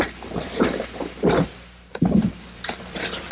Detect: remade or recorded remade